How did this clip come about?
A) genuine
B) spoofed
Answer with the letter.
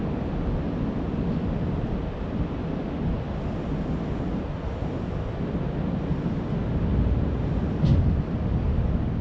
A